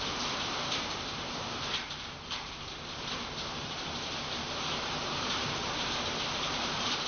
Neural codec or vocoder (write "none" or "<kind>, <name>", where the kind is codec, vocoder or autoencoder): vocoder, BigVGAN v2